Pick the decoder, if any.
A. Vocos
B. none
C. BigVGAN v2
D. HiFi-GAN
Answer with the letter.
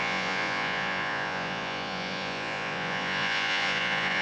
A